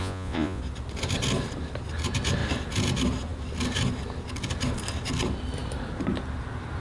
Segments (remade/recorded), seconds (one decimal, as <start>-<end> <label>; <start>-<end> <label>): 0.0-0.6 remade; 0.6-6.8 recorded